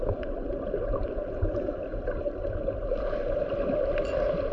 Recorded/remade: recorded